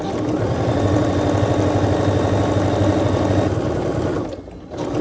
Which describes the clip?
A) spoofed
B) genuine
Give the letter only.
B